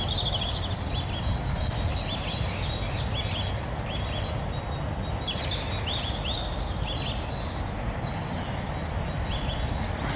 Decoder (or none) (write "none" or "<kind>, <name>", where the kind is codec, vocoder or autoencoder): none